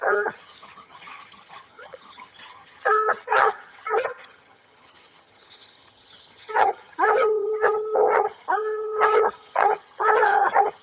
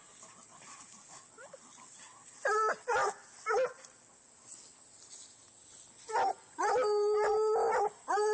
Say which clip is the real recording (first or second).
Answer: second